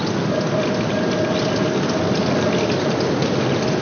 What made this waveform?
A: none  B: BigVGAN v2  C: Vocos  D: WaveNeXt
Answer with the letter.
A